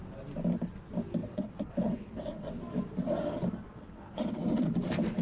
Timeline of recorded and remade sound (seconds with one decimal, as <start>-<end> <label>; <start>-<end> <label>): 0.0-1.2 recorded; 1.2-2.5 remade; 2.5-3.6 recorded; 3.6-4.7 remade; 4.7-5.2 recorded